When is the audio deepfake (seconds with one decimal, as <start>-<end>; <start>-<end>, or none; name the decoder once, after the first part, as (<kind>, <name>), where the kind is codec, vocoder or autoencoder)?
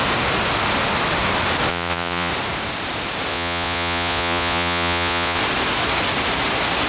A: 1.7-2.3 (vocoder, Vocos); 3.3-5.4